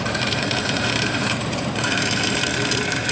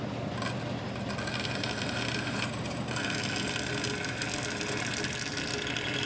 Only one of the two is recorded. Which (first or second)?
second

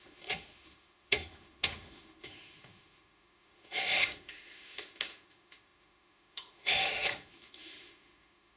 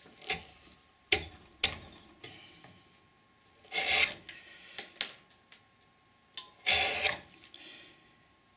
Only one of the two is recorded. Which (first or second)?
second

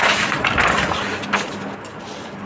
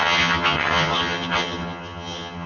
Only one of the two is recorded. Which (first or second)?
first